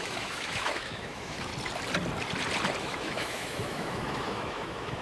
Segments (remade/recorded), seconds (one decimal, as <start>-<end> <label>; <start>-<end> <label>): 0.0-1.5 remade; 1.5-2.8 recorded; 2.8-5.0 remade